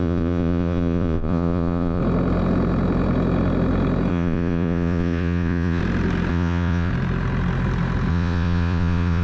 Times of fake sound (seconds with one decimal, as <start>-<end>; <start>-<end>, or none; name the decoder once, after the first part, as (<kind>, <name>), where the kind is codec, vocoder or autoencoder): 0.0-2.0 (vocoder, Vocos); 4.1-5.8; 6.3-6.9; 8.1-9.2